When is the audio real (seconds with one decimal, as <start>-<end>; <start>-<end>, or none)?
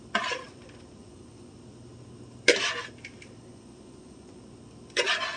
0.0-1.0; 1.5-3.4; 4.4-5.4